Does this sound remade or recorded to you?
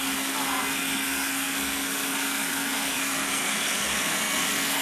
remade